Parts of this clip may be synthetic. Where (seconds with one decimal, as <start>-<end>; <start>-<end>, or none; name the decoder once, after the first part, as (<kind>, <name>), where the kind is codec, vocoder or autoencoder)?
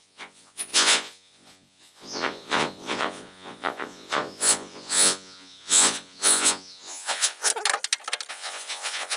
0.0-7.5 (vocoder, Vocos); 8.3-9.2